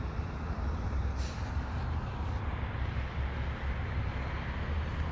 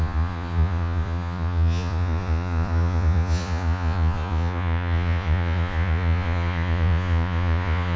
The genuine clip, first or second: first